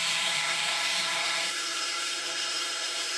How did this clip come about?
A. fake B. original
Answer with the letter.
A